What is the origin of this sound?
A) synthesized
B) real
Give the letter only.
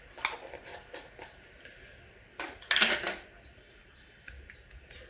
B